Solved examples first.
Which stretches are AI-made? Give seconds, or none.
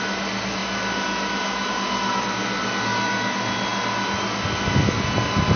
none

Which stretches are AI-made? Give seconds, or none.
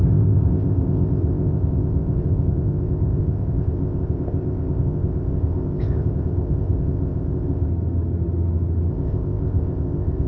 0.0-7.7 (codec, ZipCodec); 8.9-10.3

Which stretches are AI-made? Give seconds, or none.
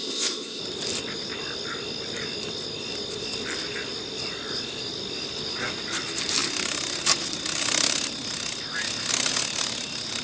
0.0-0.6 (codec, ZipCodec)